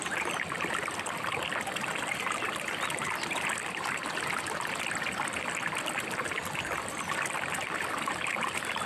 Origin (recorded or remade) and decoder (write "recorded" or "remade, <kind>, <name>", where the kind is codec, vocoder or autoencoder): remade, vocoder, BigVGAN v2